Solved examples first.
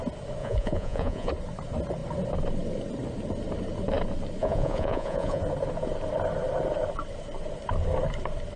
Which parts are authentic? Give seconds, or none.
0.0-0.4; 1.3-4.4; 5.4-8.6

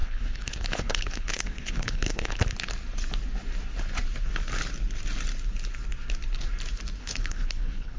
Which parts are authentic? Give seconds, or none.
2.4-7.0